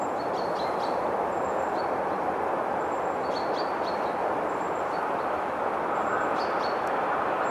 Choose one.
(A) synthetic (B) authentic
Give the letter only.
B